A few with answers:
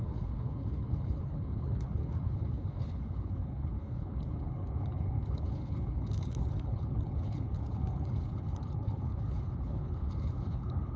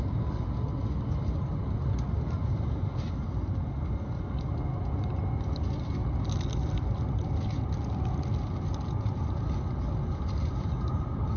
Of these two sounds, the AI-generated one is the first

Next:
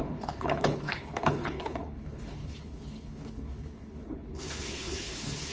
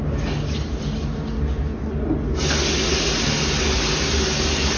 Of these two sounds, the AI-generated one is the first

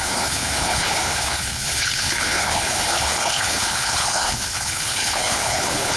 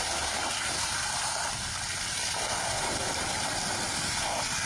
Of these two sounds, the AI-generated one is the first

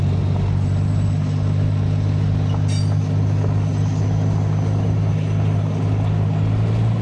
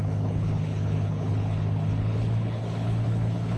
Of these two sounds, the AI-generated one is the second